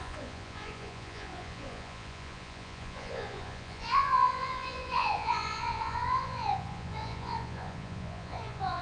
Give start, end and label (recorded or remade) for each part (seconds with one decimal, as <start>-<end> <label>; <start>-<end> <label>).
0.0-8.8 remade